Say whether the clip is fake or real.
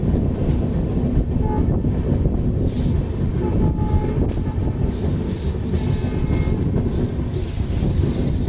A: real